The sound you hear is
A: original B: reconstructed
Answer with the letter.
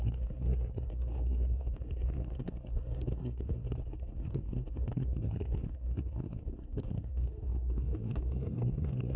B